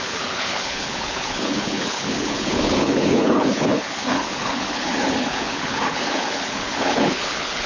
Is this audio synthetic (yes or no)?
yes